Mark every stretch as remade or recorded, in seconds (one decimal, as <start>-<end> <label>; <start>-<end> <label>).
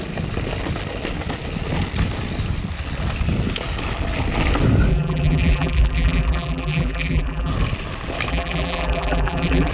0.0-4.9 recorded; 4.9-7.5 remade; 7.5-8.3 recorded; 8.3-9.7 remade